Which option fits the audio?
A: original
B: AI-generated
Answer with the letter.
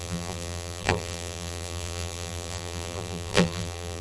B